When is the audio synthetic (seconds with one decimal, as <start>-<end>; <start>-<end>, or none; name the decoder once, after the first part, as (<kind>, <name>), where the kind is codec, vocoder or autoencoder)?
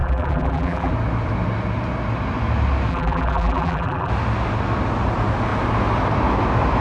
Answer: 0.0-0.9 (vocoder, BigVGAN v2); 2.9-4.1